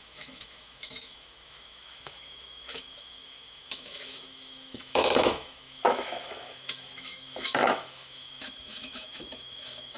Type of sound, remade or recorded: remade